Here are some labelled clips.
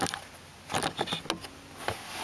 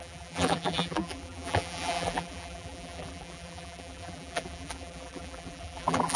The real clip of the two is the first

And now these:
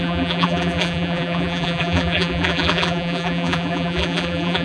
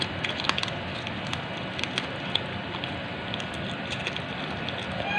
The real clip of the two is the second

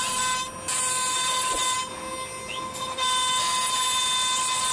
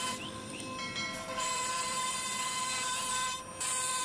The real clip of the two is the first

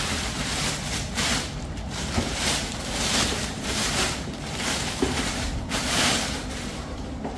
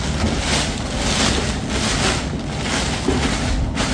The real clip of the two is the second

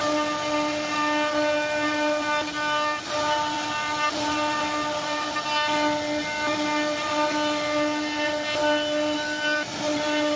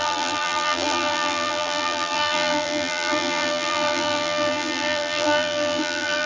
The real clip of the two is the first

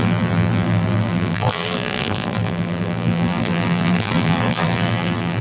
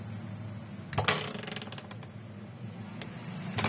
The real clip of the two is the second